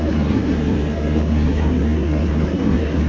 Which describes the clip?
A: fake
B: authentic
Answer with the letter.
A